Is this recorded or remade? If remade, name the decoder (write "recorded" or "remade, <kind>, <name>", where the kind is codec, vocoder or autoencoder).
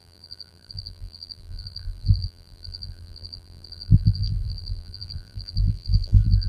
remade, vocoder, BigVGAN v2